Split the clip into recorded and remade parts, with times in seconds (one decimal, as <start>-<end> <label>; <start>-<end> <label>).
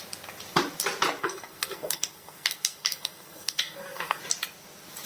0.0-1.2 recorded; 1.2-4.2 remade; 4.2-5.1 recorded